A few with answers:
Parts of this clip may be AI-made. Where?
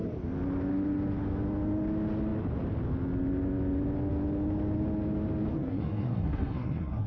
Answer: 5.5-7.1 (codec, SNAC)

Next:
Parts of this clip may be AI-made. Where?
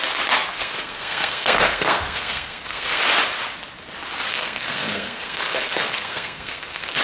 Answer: 0.5-3.0 (codec, SNAC); 4.3-7.0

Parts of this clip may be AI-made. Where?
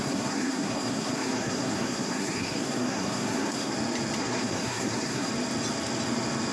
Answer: 0.0-3.7 (codec, SNAC); 4.2-5.3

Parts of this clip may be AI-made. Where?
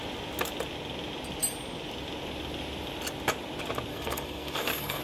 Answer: 3.9-5.0 (codec, SNAC)